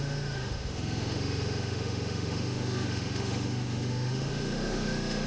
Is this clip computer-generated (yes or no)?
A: yes